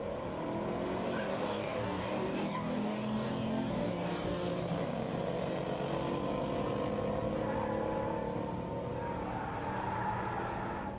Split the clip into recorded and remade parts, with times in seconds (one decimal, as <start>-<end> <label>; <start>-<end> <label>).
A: 0.0-1.3 recorded; 1.3-4.5 remade; 4.5-11.0 recorded